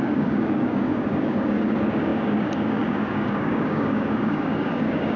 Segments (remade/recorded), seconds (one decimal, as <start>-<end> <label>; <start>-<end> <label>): 0.0-5.2 remade